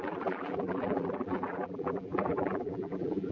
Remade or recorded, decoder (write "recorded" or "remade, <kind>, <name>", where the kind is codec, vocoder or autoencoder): remade, vocoder, BigVGAN v2